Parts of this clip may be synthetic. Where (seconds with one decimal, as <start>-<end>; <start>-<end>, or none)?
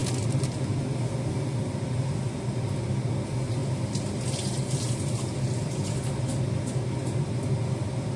none